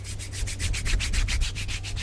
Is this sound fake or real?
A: real